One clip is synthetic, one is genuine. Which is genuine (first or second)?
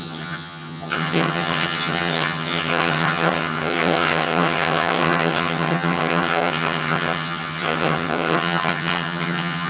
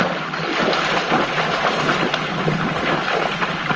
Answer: second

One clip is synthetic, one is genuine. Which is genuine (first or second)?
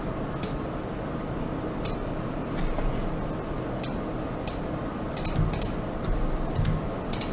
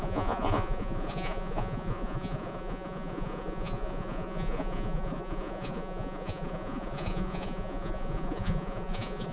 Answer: first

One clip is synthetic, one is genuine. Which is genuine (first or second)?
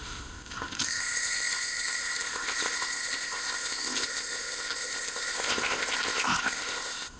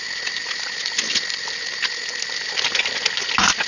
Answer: second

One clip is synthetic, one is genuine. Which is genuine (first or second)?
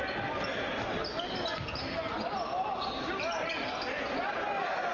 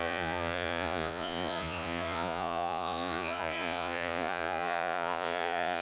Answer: first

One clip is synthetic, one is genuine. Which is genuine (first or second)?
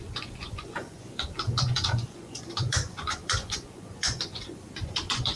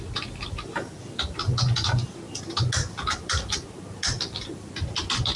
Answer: second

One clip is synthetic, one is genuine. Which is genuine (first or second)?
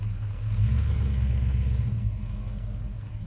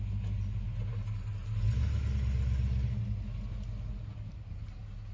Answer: second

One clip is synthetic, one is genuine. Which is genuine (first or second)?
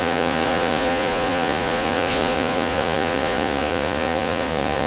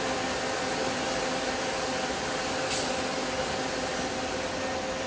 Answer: second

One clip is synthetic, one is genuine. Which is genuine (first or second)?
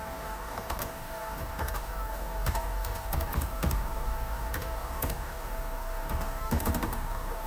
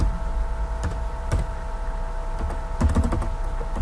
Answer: second